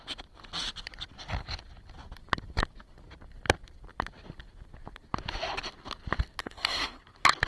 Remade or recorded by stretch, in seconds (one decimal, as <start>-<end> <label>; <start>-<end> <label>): 0.0-6.4 recorded; 6.4-7.0 remade; 7.0-7.5 recorded

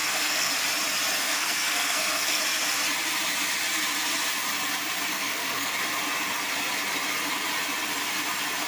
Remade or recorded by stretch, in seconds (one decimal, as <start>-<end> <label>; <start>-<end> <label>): 0.0-0.5 remade; 0.5-1.2 recorded; 1.2-2.4 remade; 2.4-5.1 recorded; 5.1-5.7 remade; 5.7-8.7 recorded

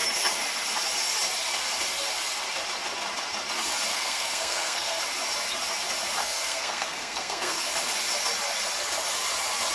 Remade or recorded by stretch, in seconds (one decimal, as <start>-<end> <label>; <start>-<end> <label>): 0.0-3.9 recorded; 3.9-5.0 remade; 5.0-6.2 recorded; 6.2-7.6 remade; 7.6-9.7 recorded

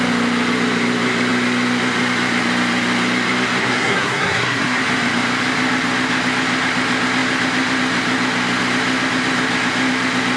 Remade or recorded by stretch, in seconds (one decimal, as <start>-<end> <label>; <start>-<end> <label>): 0.0-3.6 recorded; 3.6-4.8 remade; 4.8-10.4 recorded